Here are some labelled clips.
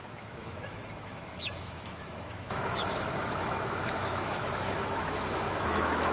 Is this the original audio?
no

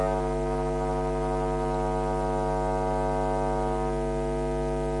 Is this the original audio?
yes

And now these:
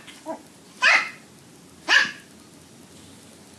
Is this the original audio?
yes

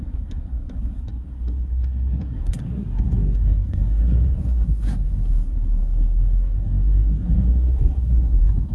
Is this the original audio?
no